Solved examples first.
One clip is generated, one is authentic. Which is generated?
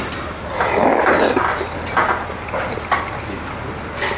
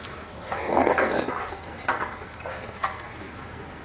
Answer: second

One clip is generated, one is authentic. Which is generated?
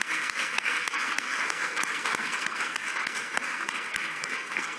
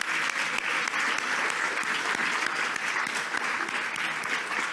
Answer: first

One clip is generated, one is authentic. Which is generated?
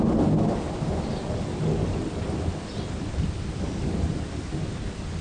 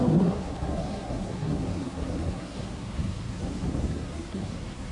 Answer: second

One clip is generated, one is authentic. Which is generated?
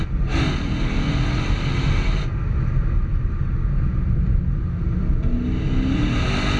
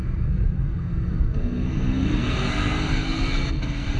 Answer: second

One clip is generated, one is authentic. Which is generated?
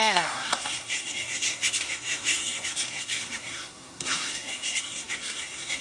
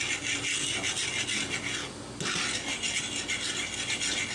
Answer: first